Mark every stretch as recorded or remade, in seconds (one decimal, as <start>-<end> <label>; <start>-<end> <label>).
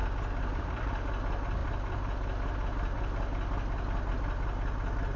0.0-5.2 recorded